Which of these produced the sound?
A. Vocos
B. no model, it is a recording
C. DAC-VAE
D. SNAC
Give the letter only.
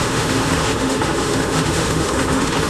C